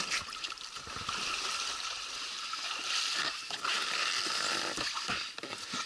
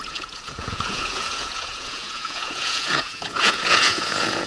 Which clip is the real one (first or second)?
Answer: first